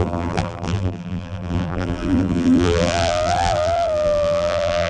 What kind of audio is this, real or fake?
fake